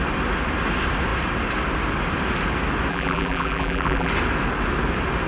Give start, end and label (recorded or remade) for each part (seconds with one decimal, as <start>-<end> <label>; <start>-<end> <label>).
0.0-2.9 recorded; 2.9-4.1 remade; 4.1-5.3 recorded